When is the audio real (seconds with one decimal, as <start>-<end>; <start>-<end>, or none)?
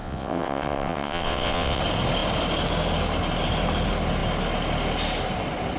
1.8-5.8